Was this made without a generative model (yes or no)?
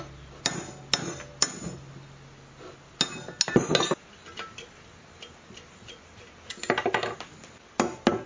yes